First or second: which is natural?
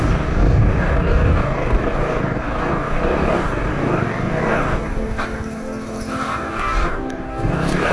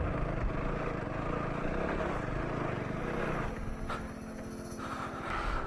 second